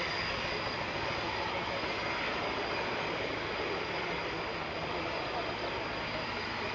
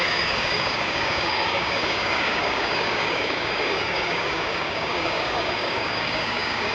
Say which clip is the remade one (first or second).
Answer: second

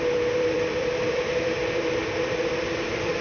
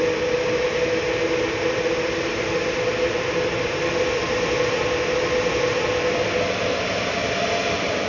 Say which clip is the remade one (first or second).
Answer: first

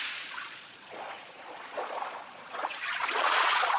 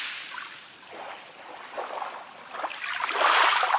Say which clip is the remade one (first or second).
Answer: first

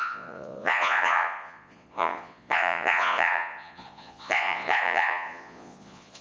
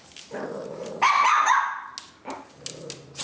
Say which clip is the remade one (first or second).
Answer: first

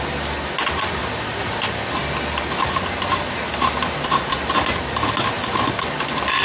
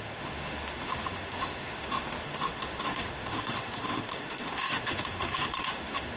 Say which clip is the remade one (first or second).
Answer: second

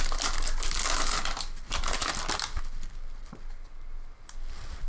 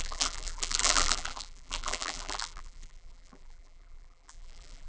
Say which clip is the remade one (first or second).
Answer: second